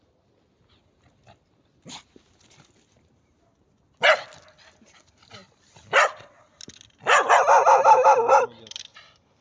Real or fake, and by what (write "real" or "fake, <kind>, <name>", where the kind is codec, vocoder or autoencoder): real